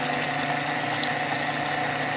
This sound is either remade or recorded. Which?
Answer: recorded